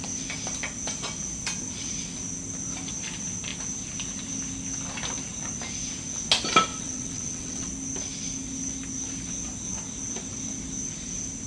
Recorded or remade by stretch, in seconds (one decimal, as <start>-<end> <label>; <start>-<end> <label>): 0.0-6.7 recorded; 6.7-7.7 remade; 7.7-11.5 recorded